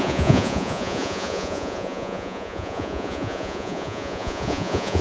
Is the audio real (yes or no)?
no